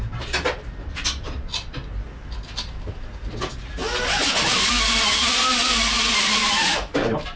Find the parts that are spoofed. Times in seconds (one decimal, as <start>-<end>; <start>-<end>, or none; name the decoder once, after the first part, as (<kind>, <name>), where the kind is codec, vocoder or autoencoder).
none